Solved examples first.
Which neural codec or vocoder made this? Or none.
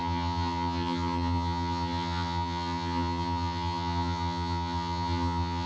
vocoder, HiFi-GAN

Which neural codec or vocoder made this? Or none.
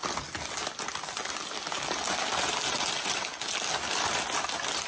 none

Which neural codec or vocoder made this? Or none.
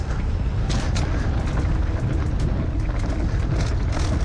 none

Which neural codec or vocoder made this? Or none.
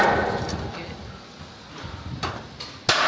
none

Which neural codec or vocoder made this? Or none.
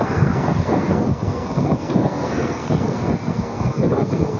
codec, SNAC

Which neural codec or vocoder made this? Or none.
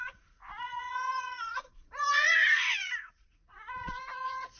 vocoder, Vocos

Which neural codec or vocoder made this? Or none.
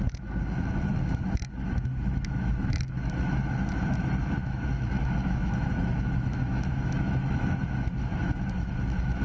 autoencoder, DAC-VAE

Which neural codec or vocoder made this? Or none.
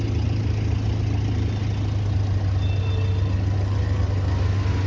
none